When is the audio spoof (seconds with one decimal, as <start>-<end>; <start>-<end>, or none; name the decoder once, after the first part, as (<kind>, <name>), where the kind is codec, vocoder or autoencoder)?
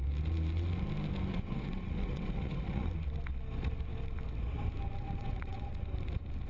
1.3-2.9 (vocoder, WaveNeXt); 5.0-5.7